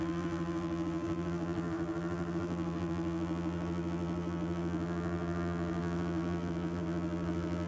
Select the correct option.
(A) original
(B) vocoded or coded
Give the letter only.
B